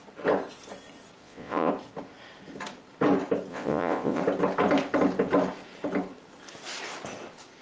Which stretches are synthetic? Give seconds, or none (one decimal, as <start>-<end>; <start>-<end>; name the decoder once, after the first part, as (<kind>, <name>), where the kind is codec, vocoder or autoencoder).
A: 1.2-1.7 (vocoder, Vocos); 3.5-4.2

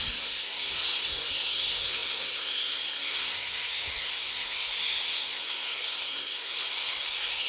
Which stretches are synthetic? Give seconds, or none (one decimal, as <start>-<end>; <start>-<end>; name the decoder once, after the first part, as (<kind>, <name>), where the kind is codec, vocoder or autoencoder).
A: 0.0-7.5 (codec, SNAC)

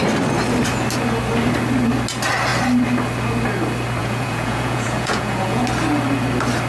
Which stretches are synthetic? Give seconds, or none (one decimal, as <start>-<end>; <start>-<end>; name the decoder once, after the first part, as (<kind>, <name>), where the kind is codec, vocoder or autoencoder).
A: 4.0-5.6 (vocoder, Vocos)

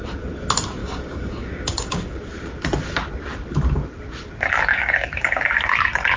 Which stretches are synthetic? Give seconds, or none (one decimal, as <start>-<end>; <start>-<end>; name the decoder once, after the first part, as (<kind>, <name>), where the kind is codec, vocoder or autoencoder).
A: 0.8-2.2 (codec, DAC); 4.7-5.7

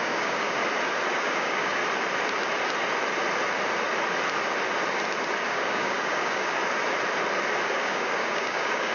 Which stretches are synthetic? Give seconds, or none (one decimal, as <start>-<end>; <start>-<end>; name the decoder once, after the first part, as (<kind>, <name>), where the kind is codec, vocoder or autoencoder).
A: 0.0-0.6 (codec, DAC); 1.2-1.8; 5.5-6.6; 7.7-8.9

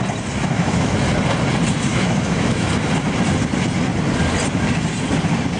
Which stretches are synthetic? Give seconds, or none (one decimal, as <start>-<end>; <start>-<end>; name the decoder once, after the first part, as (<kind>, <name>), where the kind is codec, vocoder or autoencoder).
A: 0.4-1.1 (autoencoder, DAC-VAE); 1.9-2.7

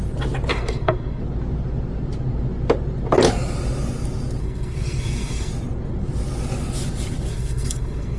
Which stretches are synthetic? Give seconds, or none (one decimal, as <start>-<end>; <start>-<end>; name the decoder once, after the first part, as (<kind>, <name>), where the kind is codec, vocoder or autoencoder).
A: 0.5-1.2 (codec, SNAC); 4.4-5.5; 7.3-8.2